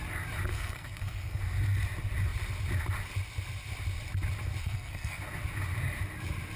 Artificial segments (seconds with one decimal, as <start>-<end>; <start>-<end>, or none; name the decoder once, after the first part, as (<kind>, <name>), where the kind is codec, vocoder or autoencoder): 0.5-1.4 (codec, SNAC); 4.6-5.2